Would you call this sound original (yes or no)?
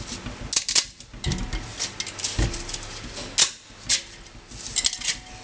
yes